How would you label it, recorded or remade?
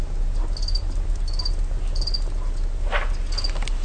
recorded